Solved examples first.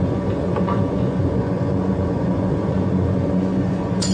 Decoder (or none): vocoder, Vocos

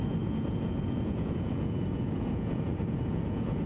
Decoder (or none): vocoder, Vocos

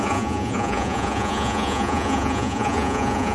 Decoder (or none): vocoder, Vocos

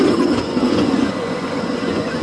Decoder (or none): vocoder, Vocos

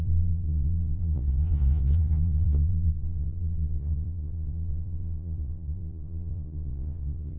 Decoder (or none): vocoder, Vocos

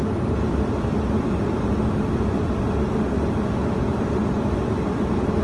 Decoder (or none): none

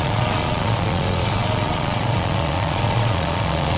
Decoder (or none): vocoder, Vocos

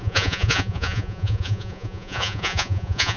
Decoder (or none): vocoder, Vocos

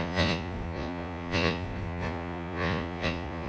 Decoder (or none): vocoder, Vocos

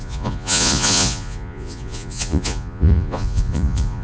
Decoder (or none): vocoder, Vocos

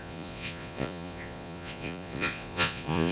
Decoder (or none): vocoder, Vocos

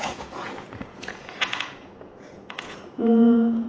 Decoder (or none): vocoder, Vocos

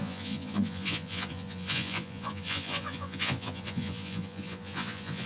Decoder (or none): vocoder, Vocos